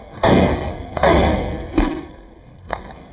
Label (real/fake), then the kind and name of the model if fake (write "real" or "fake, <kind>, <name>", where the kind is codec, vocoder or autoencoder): fake, codec, SNAC